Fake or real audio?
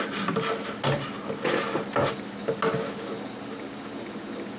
real